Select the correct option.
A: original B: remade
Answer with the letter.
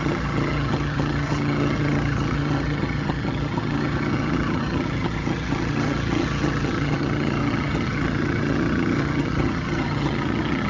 B